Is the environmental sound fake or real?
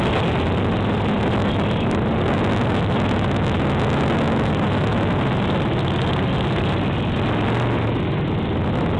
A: real